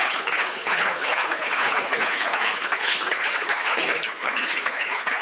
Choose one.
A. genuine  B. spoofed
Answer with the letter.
B